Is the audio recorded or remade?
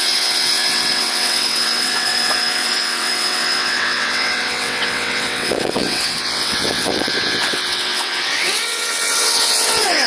remade